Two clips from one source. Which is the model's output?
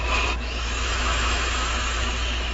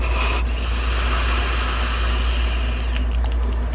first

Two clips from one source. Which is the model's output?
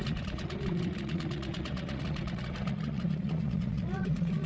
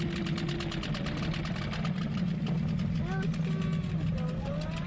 first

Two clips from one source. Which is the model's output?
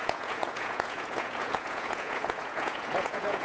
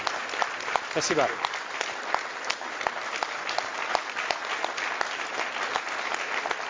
first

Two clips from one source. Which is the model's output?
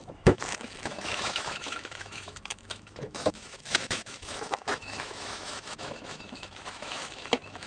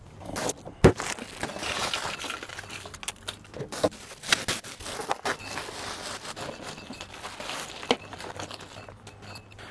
first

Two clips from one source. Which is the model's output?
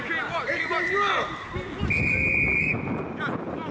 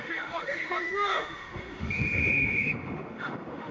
second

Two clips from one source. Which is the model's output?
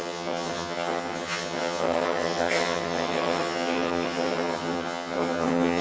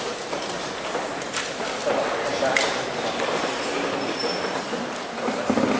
first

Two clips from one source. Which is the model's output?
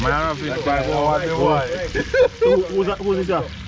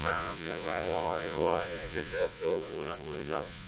second